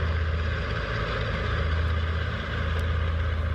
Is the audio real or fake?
real